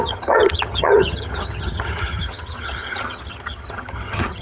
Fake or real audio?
fake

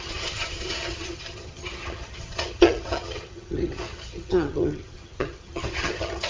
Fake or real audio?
fake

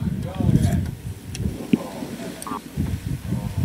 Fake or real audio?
real